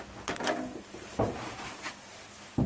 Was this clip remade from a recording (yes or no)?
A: no